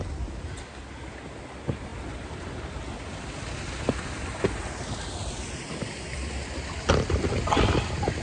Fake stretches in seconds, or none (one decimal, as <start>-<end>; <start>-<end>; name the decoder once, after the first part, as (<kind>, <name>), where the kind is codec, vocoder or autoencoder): none